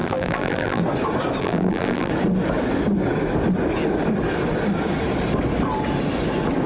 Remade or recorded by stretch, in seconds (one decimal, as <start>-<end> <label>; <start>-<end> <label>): 0.0-0.8 remade; 0.8-1.4 recorded; 1.4-2.1 remade; 2.1-6.7 recorded